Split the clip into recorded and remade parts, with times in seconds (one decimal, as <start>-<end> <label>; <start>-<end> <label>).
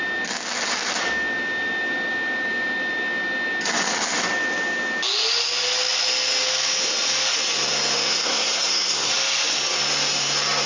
0.0-8.1 recorded; 8.1-9.1 remade; 9.1-10.7 recorded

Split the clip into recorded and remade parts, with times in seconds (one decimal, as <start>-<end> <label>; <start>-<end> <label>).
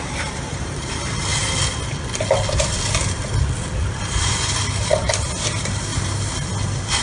0.0-1.3 remade; 1.3-4.0 recorded; 4.0-5.9 remade; 5.9-7.0 recorded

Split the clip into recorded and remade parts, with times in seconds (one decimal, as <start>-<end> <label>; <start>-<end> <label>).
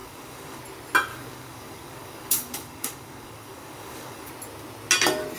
0.0-0.6 remade; 0.6-1.1 recorded; 1.1-4.3 remade; 4.3-5.4 recorded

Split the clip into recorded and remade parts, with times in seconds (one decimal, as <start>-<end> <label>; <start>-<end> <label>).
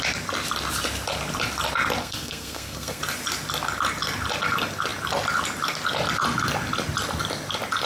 0.0-2.0 recorded; 2.0-3.0 remade; 3.0-7.9 recorded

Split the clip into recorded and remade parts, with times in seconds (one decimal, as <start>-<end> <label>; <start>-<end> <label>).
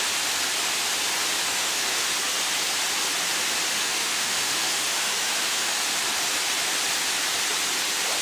0.0-1.5 recorded; 1.5-2.1 remade; 2.1-3.8 recorded; 3.8-5.8 remade; 5.8-8.2 recorded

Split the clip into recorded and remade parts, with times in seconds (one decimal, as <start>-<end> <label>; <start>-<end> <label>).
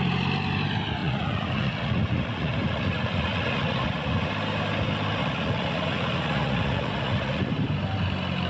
0.0-1.0 recorded; 1.0-4.3 remade; 4.3-5.2 recorded; 5.2-7.6 remade; 7.6-8.5 recorded